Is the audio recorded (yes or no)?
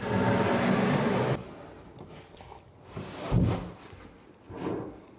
yes